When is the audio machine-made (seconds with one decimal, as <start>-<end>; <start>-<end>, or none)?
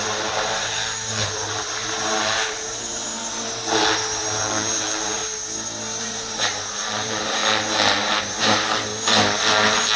0.0-3.2; 4.2-5.2; 6.0-7.4; 8.2-8.9